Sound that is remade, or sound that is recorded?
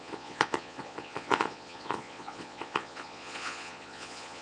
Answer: remade